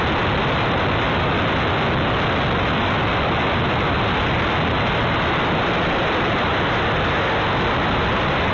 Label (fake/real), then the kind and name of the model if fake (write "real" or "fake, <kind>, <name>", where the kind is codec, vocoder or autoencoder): real